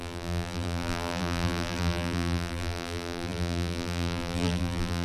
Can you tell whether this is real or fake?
fake